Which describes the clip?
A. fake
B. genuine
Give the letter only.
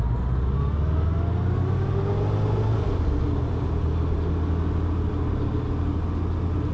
B